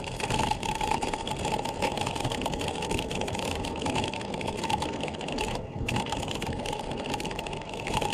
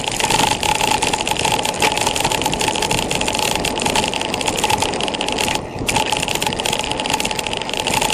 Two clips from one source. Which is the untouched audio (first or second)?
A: second